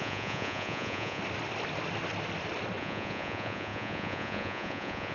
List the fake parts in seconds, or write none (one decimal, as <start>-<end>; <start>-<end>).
0.0-1.2; 2.8-5.1